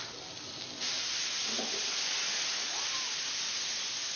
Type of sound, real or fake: real